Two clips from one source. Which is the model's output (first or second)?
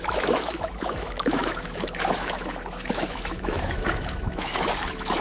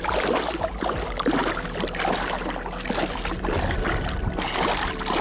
first